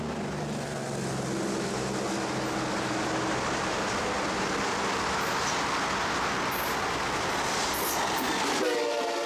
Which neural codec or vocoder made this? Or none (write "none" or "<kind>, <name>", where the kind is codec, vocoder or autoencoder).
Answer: none